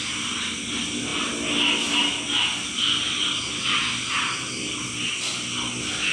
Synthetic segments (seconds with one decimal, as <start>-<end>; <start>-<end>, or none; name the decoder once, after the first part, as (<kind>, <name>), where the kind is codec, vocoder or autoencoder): none